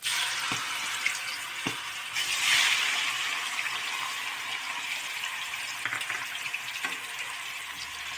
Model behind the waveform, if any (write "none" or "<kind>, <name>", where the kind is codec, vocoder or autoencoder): none